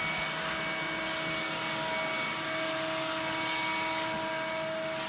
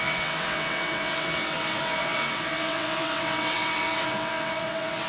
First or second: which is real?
first